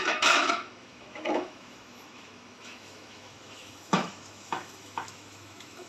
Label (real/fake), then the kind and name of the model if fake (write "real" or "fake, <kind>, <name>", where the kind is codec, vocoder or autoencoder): fake, autoencoder, DAC-VAE